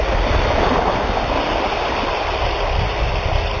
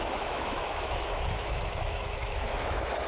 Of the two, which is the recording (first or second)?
first